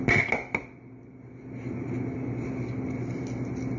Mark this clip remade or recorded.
recorded